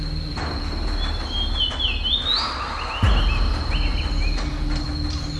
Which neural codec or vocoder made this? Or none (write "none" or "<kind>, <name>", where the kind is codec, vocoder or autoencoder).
none